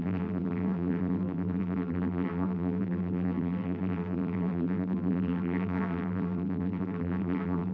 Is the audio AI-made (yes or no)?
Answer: yes